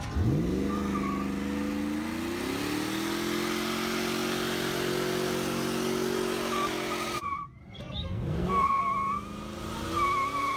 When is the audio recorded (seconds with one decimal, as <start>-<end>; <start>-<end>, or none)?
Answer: 0.0-7.6; 8.8-10.6